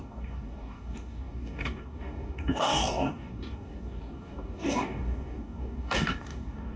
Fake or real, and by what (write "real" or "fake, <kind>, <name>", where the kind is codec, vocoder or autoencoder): fake, codec, DAC